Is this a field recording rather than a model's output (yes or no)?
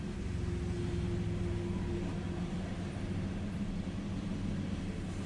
yes